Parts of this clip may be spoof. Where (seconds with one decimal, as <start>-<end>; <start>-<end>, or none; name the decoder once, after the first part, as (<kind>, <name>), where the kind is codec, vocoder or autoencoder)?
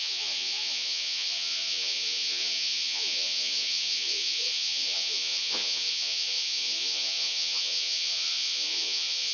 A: 0.0-9.3 (vocoder, Vocos)